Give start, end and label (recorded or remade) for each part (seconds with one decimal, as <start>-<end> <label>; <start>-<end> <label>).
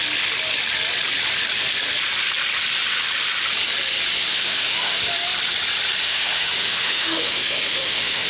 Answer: 0.0-4.3 recorded; 4.3-5.0 remade; 5.0-6.0 recorded; 6.0-8.3 remade